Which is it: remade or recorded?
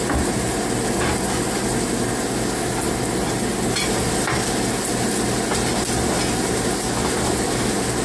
recorded